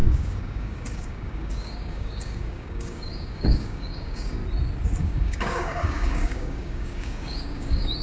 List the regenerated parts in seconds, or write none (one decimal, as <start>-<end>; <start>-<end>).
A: 0.0-4.4; 5.0-8.0